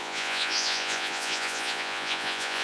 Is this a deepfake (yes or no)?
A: yes